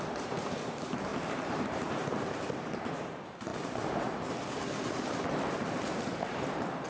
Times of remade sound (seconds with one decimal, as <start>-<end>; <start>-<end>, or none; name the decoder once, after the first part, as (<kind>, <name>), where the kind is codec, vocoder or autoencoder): 0.0-3.5 (vocoder, BigVGAN v2); 5.3-6.9